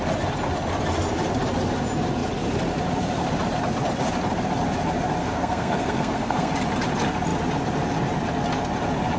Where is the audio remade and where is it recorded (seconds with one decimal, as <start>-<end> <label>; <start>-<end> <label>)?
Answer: 0.0-5.2 recorded; 5.2-6.5 remade; 6.5-9.2 recorded